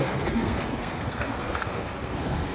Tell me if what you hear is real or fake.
fake